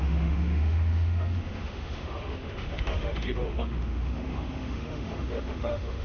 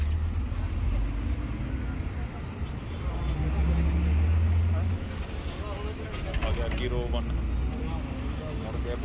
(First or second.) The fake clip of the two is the first